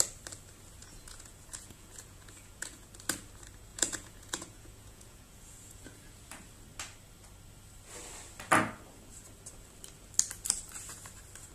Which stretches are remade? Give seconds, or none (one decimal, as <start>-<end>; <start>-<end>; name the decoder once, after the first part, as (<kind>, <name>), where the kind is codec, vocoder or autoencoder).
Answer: 0.8-2.9 (vocoder, Vocos); 3.7-6.1